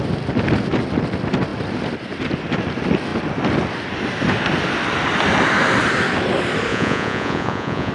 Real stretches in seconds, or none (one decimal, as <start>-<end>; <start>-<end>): 0.0-6.7